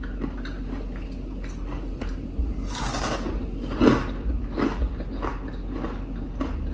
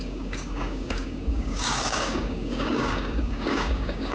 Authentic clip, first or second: first